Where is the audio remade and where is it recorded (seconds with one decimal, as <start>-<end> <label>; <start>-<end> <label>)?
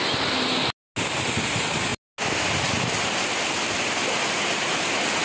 0.0-5.2 recorded